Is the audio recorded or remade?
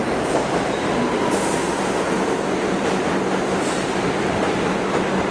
recorded